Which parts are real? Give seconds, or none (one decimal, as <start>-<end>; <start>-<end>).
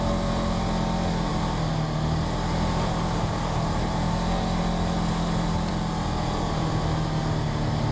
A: 0.0-7.9